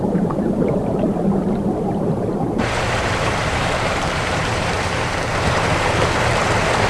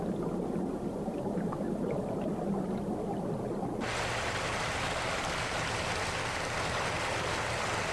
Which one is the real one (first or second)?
second